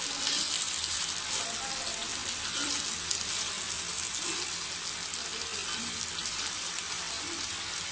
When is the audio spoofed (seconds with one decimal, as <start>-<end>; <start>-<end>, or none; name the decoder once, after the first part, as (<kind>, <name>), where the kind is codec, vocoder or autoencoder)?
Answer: 6.2-6.8 (vocoder, BigVGAN v2)